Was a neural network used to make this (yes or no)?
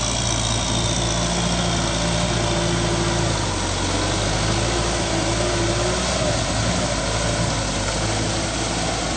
no